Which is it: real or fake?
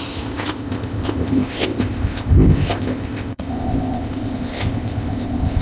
fake